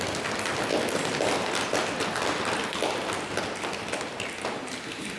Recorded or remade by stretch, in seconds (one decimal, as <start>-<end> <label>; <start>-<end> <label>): 0.0-5.2 recorded